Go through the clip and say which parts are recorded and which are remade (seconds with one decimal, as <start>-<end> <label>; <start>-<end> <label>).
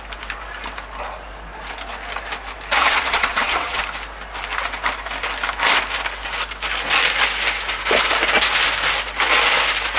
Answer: 0.0-2.8 recorded; 2.8-3.8 remade; 3.8-10.0 recorded